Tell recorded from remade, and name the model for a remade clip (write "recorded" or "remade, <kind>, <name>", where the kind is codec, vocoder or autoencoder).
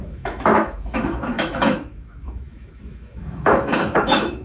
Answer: remade, autoencoder, DAC-VAE